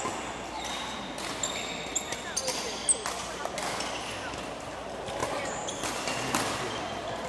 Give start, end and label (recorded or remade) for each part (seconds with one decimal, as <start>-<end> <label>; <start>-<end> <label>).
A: 0.0-5.2 recorded; 5.2-5.8 remade; 5.8-7.3 recorded